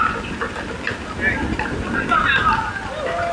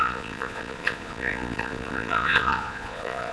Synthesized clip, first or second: second